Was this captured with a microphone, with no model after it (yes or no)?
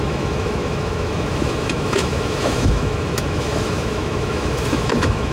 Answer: no